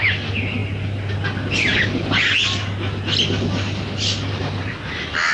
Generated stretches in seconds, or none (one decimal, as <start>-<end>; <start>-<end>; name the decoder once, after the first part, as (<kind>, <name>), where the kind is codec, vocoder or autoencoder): none